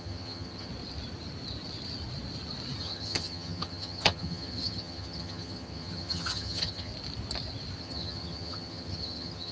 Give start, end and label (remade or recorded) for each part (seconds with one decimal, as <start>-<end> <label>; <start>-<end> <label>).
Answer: 0.0-0.7 remade; 0.7-2.8 recorded; 2.8-6.9 remade; 6.9-7.8 recorded; 7.8-9.5 remade